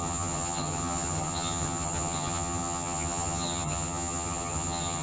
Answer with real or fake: fake